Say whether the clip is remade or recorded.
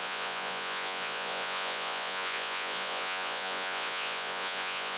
remade